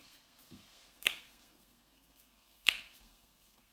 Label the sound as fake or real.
fake